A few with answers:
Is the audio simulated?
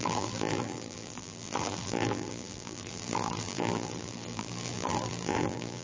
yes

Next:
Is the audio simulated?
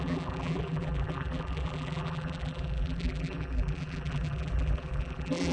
yes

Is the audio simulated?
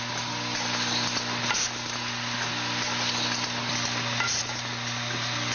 no